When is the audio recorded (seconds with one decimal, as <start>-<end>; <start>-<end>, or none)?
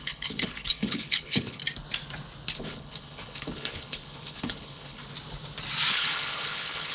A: 1.6-2.6; 5.0-5.9